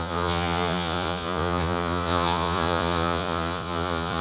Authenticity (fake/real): fake